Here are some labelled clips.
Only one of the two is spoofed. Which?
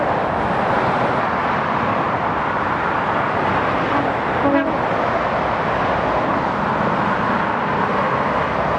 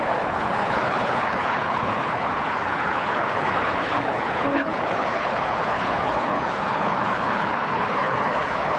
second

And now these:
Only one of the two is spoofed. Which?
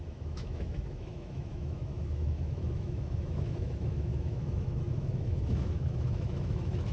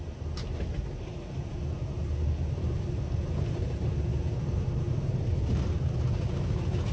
first